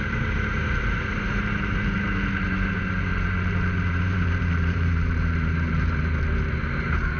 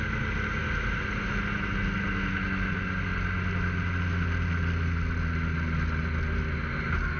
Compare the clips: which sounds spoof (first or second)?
first